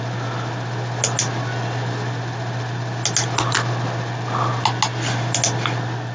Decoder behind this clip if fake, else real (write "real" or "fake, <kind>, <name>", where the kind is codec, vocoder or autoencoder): real